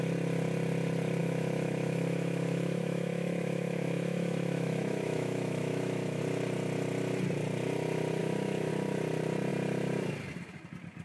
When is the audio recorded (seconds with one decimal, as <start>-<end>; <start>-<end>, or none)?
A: 0.0-1.2; 6.2-8.2; 8.7-11.0